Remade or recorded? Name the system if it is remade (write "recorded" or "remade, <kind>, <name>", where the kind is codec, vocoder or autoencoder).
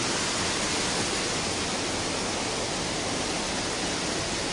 recorded